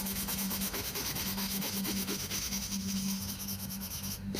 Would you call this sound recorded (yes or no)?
no